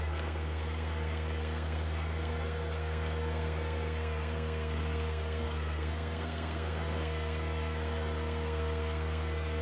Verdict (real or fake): fake